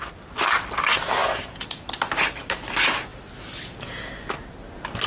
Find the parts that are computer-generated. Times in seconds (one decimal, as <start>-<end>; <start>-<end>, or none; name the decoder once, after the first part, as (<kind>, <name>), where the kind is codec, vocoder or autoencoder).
1.2-1.8 (vocoder, Vocos)